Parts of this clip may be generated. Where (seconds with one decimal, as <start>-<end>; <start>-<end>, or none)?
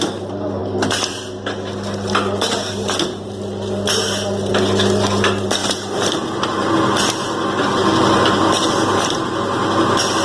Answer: 5.6-6.7